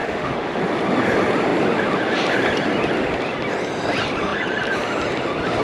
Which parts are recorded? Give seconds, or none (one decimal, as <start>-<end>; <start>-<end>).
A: 0.6-5.6